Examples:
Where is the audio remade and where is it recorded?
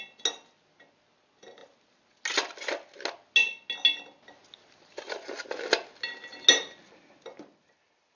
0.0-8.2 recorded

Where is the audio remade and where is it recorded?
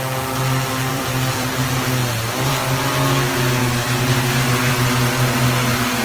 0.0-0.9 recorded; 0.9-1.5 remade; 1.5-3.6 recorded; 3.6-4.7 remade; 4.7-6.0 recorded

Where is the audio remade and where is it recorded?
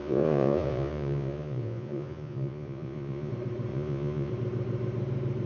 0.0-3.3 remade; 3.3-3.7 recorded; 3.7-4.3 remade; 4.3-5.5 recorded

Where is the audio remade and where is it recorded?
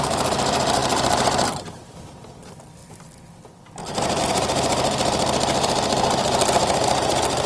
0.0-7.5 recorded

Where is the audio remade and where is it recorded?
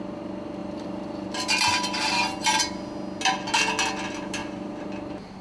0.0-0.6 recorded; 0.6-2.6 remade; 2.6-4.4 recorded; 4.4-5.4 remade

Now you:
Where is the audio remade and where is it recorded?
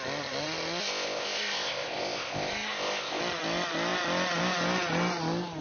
0.0-0.8 recorded; 0.8-3.2 remade; 3.2-5.6 recorded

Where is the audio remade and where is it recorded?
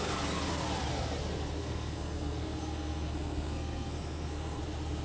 0.0-1.6 recorded; 1.6-4.6 remade; 4.6-5.0 recorded